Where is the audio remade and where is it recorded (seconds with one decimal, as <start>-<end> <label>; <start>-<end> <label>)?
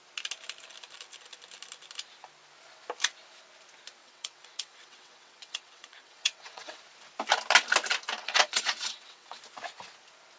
0.0-4.0 recorded; 4.0-6.8 remade; 6.8-8.2 recorded; 8.2-9.4 remade; 9.4-10.4 recorded